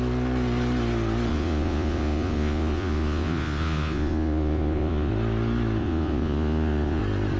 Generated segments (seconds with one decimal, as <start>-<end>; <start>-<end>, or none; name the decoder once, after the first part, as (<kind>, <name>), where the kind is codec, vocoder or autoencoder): 1.3-5.1 (vocoder, Vocos); 5.8-7.0